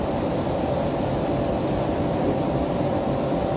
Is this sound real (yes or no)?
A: yes